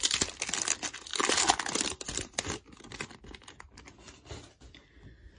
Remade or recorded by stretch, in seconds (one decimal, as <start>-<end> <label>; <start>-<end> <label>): 0.0-5.4 recorded